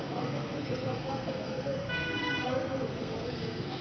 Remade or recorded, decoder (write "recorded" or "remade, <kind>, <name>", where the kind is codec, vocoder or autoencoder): remade, codec, SNAC